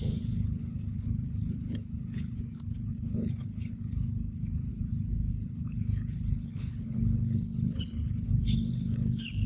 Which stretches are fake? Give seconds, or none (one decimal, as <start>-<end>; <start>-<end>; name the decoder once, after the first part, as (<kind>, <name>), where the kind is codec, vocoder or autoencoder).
0.0-4.7 (codec, HILCodec); 5.3-9.5